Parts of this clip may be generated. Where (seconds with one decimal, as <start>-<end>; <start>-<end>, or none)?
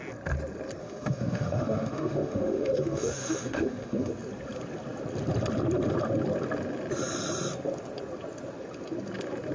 0.8-4.1